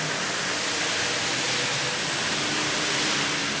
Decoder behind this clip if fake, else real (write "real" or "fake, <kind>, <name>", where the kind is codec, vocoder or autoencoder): real